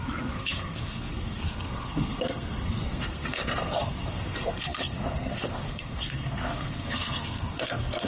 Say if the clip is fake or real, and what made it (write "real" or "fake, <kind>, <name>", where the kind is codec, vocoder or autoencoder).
fake, codec, SNAC